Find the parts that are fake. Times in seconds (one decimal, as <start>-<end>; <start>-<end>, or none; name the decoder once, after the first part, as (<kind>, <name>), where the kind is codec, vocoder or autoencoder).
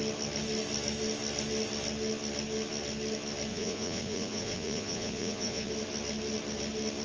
3.5-5.7 (vocoder, Vocos)